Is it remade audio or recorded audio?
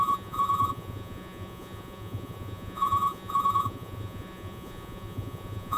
remade